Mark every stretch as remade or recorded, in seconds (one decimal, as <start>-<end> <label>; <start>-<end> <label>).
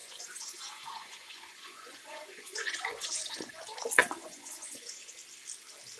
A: 0.0-3.6 remade; 3.6-4.0 recorded; 4.0-5.1 remade; 5.1-6.0 recorded